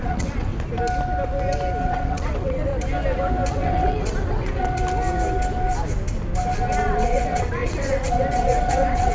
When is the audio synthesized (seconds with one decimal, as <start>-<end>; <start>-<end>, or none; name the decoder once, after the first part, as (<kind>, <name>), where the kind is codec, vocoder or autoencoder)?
0.0-0.5 (vocoder, WaveNeXt); 1.8-2.7; 3.5-4.8; 6.8-9.1